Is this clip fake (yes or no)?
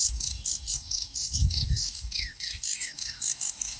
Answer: yes